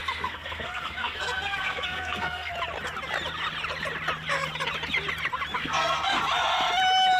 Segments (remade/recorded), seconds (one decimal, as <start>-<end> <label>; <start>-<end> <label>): 0.0-2.5 remade; 2.5-5.6 recorded; 5.6-6.2 remade; 6.2-7.2 recorded